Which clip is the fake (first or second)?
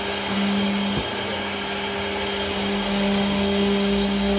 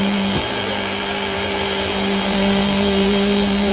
second